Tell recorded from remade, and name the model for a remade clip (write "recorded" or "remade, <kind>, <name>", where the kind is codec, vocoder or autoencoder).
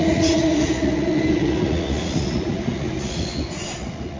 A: remade, vocoder, Vocos